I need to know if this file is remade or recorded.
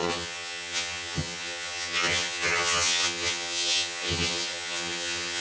remade